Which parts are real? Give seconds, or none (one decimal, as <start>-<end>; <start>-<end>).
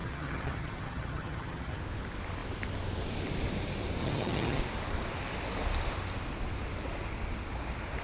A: 1.8-4.0; 4.6-8.0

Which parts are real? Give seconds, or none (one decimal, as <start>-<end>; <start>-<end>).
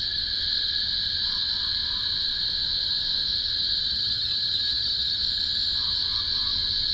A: 0.0-3.9; 5.2-6.9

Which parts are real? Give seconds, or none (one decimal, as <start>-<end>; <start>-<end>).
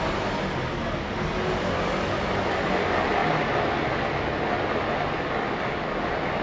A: 0.0-6.4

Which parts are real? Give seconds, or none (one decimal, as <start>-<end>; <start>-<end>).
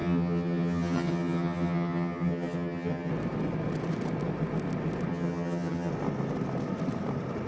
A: 3.1-5.1; 5.9-7.5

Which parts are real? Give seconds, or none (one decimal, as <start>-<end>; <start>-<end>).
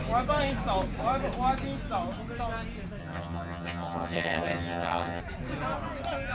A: 0.0-3.0; 5.2-6.3